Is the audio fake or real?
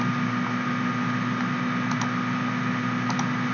real